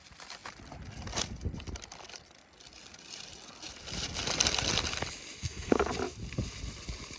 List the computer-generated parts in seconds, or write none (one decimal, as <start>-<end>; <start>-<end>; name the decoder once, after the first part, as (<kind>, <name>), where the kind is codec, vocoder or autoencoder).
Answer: 5.4-5.9 (codec, SNAC)